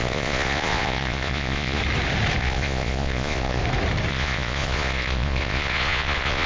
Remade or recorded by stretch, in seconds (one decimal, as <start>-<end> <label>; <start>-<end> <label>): 0.0-1.8 remade; 1.8-2.4 recorded; 2.4-3.6 remade; 3.6-4.1 recorded; 4.1-6.5 remade